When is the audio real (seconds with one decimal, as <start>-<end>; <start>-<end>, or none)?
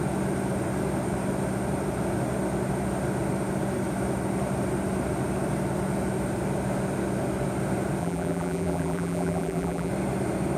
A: 0.0-8.0; 9.9-10.6